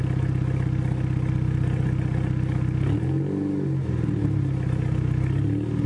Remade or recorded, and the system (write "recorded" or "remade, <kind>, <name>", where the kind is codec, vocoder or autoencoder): recorded